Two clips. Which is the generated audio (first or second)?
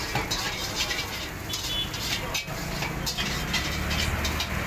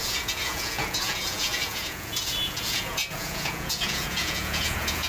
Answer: second